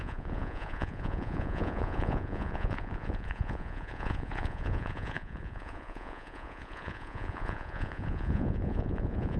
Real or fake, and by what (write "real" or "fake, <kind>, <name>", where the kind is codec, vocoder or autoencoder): fake, vocoder, Vocos